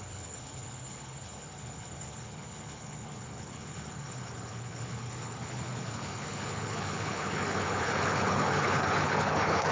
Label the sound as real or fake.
fake